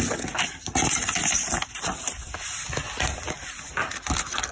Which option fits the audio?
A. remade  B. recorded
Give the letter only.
B